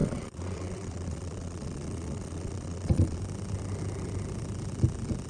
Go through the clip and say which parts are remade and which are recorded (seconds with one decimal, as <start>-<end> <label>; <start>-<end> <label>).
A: 0.0-3.2 remade; 3.2-5.3 recorded